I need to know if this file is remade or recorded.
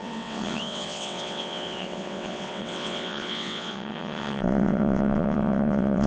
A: remade